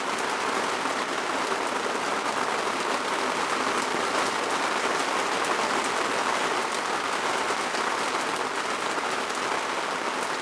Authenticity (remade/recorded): recorded